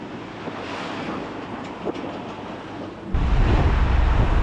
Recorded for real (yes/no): yes